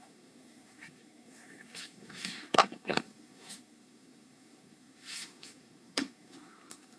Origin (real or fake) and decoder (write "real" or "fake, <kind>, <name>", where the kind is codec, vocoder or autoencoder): fake, codec, SNAC